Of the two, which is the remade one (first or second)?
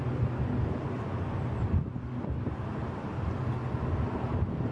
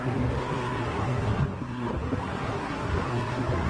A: second